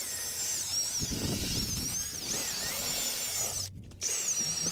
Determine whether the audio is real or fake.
real